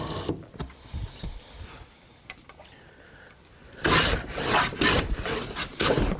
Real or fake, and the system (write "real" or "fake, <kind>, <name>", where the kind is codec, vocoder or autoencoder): fake, vocoder, BigVGAN v2